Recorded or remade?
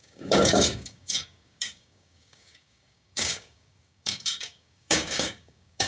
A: remade